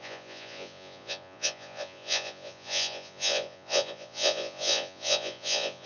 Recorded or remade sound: remade